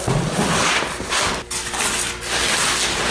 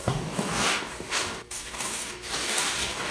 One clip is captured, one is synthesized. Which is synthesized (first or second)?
second